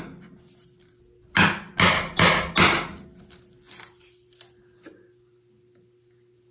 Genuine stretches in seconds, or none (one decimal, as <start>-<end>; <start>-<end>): 0.0-6.5